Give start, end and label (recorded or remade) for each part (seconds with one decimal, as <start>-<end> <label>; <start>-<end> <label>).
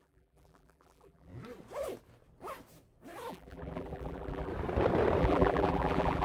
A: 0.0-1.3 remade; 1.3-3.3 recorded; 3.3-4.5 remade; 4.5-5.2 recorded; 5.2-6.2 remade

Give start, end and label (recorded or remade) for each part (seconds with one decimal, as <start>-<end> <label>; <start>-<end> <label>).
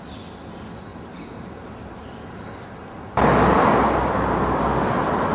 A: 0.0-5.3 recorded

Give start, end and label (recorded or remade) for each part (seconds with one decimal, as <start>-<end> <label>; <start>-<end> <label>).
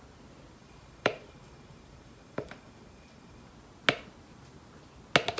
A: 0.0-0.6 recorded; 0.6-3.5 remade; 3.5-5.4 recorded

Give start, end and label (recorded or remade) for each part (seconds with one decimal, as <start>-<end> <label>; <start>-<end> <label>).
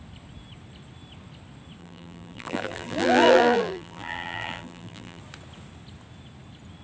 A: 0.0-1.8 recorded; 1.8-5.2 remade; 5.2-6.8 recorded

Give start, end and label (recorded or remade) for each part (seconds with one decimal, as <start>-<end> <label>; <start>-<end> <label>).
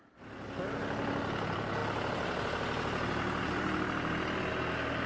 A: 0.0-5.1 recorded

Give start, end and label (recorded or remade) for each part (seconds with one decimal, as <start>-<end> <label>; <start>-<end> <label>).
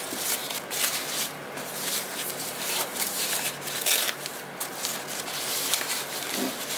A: 0.0-0.4 recorded; 0.4-4.3 remade; 4.3-6.8 recorded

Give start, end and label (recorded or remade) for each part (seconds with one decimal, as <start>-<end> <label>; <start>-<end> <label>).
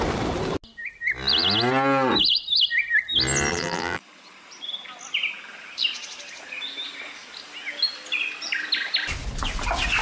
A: 0.0-3.5 recorded; 3.5-4.0 remade; 4.0-10.0 recorded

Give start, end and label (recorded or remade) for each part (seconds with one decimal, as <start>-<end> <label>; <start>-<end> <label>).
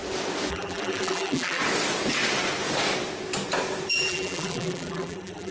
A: 0.0-0.5 recorded; 0.5-1.6 remade; 1.6-3.9 recorded; 3.9-5.5 remade